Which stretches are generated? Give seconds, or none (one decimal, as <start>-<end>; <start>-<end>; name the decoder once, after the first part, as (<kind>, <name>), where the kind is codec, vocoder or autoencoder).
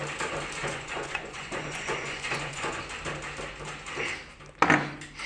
0.6-2.8 (vocoder, Vocos)